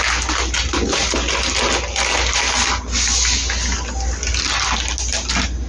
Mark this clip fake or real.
real